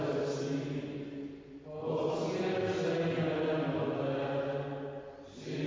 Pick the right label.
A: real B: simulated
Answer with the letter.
A